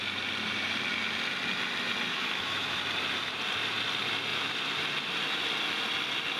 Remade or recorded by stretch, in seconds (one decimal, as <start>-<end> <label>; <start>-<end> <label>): 0.0-2.1 recorded; 2.1-2.8 remade; 2.8-6.4 recorded